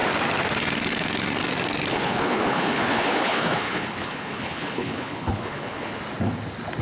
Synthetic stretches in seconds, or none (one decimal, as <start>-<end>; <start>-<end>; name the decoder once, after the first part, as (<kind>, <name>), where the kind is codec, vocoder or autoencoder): 1.9-6.0 (codec, HILCodec)

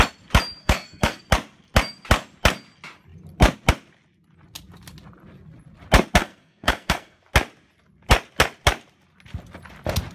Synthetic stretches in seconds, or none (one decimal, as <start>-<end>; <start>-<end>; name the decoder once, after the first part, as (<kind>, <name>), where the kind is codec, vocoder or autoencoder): 0.6-1.2 (codec, SNAC); 6.2-7.2

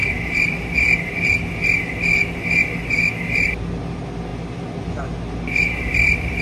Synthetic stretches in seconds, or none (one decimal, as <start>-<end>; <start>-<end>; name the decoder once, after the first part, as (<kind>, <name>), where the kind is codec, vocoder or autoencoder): none